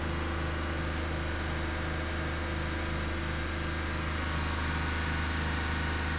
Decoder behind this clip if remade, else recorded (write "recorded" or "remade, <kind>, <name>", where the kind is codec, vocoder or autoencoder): recorded